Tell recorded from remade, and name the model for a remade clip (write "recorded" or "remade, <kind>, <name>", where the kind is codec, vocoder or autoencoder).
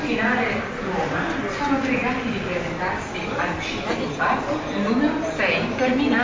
recorded